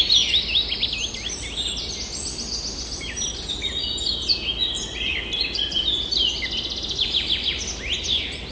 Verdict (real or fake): real